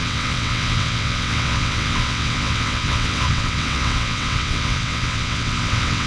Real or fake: fake